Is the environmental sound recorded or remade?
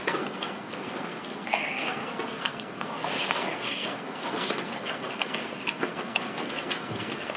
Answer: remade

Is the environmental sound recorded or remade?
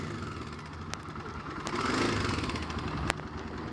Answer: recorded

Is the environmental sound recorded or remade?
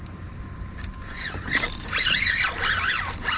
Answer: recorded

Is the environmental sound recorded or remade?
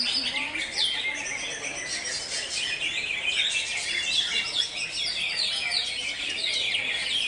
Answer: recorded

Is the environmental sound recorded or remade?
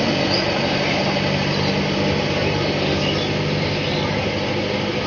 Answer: recorded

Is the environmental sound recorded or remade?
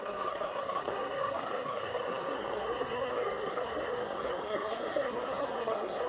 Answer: remade